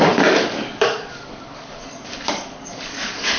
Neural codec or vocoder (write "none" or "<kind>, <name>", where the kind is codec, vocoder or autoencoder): codec, DAC